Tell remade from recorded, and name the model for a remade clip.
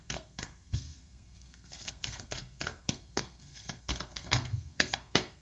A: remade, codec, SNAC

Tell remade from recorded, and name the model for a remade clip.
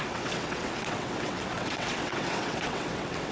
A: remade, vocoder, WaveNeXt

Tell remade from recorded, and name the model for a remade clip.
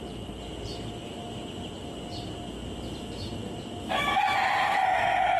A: recorded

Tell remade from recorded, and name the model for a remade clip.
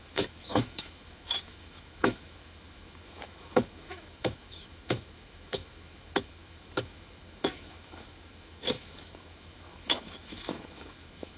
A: remade, autoencoder, DAC-VAE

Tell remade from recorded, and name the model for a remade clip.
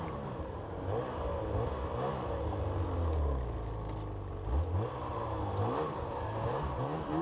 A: recorded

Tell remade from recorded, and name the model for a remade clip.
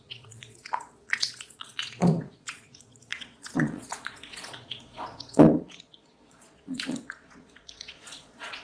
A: remade, vocoder, Vocos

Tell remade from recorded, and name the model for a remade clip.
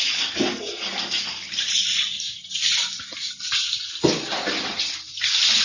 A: recorded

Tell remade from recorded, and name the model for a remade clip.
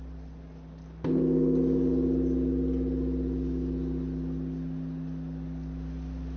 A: recorded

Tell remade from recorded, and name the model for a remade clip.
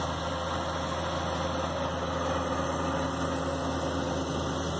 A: recorded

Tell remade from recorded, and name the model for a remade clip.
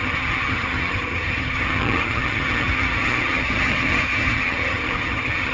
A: remade, vocoder, HiFi-GAN